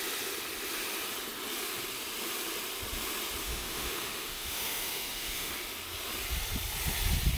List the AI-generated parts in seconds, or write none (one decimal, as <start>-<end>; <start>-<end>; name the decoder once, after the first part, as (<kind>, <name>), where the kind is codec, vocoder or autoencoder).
3.4-5.5 (autoencoder, DAC-VAE)